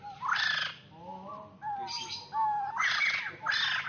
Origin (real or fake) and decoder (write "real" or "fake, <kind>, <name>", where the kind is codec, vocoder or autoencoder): real